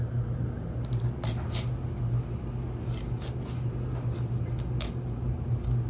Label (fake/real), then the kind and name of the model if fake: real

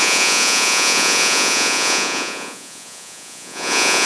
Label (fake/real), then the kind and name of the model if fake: fake, vocoder, Vocos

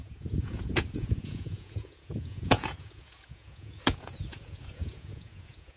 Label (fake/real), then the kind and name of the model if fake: fake, vocoder, Vocos